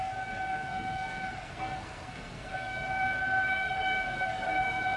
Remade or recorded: remade